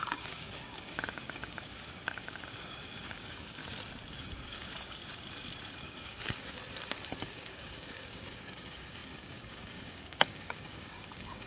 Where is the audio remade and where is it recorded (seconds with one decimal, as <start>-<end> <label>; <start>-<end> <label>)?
0.0-3.6 remade; 3.6-4.1 recorded; 4.1-5.0 remade; 5.0-5.8 recorded; 5.8-6.6 remade; 6.6-7.2 recorded; 7.2-11.5 remade